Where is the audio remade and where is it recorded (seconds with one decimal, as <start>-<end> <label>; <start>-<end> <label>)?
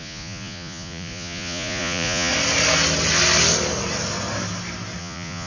0.0-2.3 remade; 2.3-5.0 recorded; 5.0-5.5 remade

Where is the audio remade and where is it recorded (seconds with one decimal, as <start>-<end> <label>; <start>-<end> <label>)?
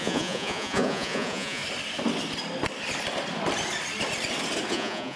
0.0-1.6 remade; 1.6-4.7 recorded; 4.7-5.2 remade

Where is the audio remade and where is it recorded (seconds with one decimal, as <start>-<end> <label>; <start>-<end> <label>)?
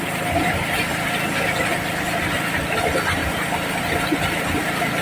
0.0-5.0 recorded